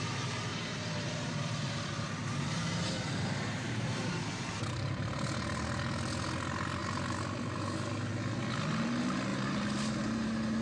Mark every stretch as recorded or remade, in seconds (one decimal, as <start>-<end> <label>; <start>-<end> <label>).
0.0-0.5 recorded; 0.5-4.2 remade; 4.2-9.3 recorded; 9.3-10.6 remade

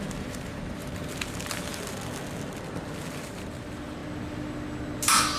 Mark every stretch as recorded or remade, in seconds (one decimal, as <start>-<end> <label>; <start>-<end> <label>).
0.0-1.7 remade; 1.7-3.1 recorded; 3.1-4.0 remade; 4.0-5.4 recorded

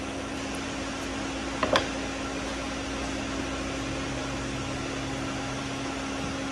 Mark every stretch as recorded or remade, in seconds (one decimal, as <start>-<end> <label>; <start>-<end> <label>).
0.0-6.5 recorded